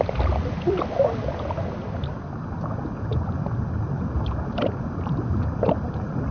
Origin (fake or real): real